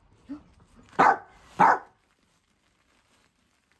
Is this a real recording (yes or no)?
yes